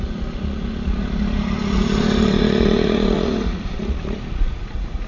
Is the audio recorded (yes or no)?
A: no